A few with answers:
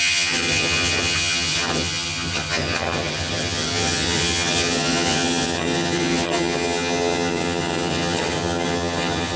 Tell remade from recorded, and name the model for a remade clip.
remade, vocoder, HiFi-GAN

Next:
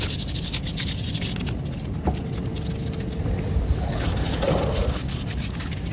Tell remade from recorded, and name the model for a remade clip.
recorded